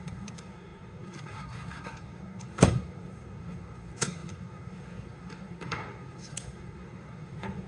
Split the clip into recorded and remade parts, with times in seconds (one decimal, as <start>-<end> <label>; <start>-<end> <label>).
0.0-7.7 remade